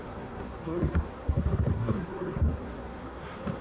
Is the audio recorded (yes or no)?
no